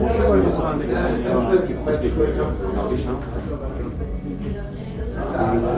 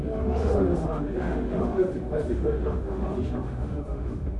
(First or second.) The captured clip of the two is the first